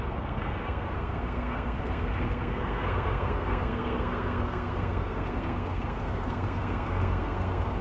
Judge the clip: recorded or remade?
remade